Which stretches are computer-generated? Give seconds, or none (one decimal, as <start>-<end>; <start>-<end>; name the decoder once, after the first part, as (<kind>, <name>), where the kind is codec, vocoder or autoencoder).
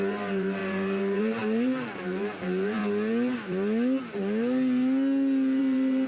0.0-2.8 (vocoder, BigVGAN v2); 5.6-6.1